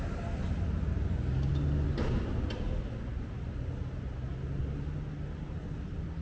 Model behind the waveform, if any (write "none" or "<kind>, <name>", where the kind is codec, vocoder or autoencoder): none